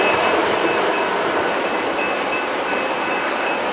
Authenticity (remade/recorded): remade